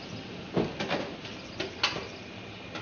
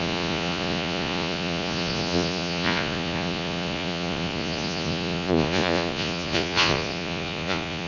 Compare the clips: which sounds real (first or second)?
first